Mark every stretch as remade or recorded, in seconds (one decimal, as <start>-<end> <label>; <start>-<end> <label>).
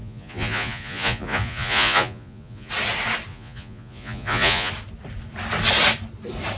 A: 0.0-2.7 remade; 2.7-3.3 recorded; 3.3-4.7 remade; 4.7-6.6 recorded